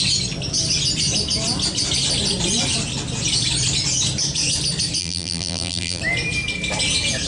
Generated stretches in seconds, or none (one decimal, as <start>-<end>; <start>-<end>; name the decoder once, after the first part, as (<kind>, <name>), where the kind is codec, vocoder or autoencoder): 5.0-6.0 (vocoder, BigVGAN v2)